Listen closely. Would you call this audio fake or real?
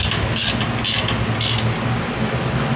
real